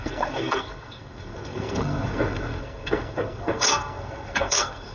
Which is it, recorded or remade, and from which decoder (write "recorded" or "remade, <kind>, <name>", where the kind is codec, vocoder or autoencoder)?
remade, codec, SNAC